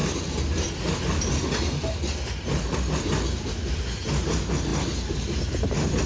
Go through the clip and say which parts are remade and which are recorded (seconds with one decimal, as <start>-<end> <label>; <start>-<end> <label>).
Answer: 0.0-6.1 recorded